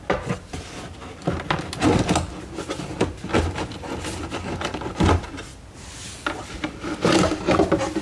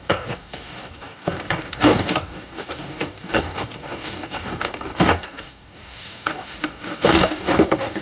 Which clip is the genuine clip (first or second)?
first